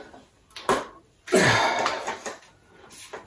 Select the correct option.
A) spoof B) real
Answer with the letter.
B